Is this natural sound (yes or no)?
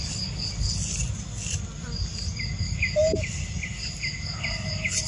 yes